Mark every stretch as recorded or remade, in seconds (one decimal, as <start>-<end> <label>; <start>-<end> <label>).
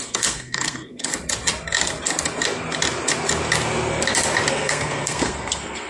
0.0-1.1 remade; 1.1-4.5 recorded; 4.5-5.9 remade